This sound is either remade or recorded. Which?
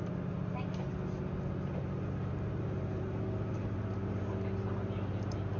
recorded